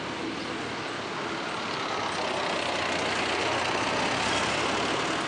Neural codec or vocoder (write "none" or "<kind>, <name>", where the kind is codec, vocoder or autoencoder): none